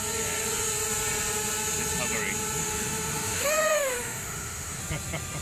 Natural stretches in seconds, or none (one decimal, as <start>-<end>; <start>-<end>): 0.0-2.6; 4.8-5.4